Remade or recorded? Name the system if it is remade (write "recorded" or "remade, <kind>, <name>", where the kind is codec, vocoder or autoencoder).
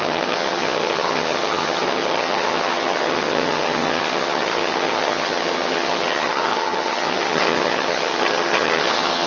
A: remade, vocoder, HiFi-GAN